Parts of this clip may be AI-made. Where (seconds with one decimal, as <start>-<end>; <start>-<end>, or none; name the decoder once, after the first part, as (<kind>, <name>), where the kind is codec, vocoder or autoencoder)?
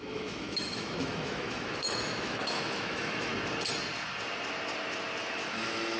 0.0-3.3 (autoencoder, DAC-VAE); 5.2-6.0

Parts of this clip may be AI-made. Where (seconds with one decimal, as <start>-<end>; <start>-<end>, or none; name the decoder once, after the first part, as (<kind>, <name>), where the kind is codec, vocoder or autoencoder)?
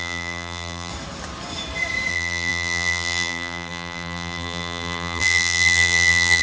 0.0-0.9 (vocoder, BigVGAN v2); 2.1-6.4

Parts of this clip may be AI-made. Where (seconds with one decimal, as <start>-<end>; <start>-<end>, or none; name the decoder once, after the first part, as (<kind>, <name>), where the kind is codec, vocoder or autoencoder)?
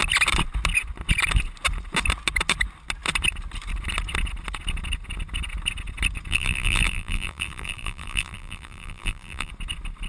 6.3-9.5 (vocoder, BigVGAN v2)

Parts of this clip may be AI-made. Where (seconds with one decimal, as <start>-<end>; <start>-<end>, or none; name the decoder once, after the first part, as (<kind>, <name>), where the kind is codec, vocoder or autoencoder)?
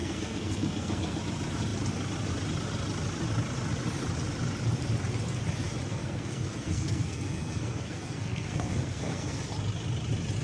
0.0-1.2 (codec, SNAC); 5.9-9.4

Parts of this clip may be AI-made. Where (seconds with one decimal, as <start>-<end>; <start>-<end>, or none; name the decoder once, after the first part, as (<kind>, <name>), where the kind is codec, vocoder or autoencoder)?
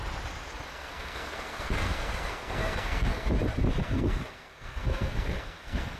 0.7-3.3 (codec, SNAC); 3.8-6.0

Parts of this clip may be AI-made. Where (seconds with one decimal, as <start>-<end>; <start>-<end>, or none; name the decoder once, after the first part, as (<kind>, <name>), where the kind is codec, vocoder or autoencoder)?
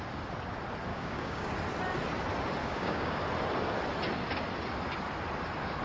0.9-1.5 (codec, DAC); 2.6-3.2